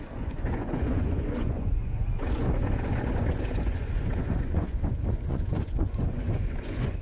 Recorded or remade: remade